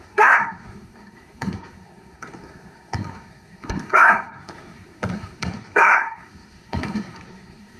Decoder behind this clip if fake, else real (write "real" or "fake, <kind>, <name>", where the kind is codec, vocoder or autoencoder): fake, codec, SNAC